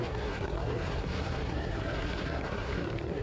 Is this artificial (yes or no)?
yes